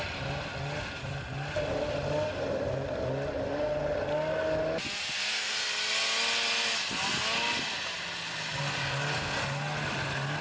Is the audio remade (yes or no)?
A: no